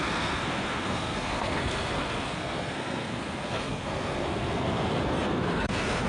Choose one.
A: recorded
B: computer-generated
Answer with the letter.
B